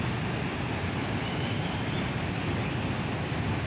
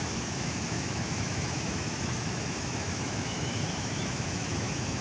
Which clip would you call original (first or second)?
first